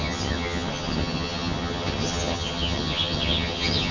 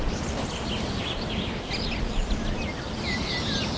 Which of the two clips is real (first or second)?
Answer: second